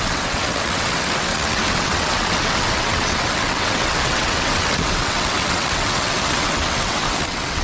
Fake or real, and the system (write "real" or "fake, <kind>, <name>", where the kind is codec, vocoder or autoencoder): fake, vocoder, WaveNeXt